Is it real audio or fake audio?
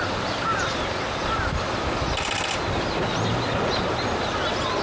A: real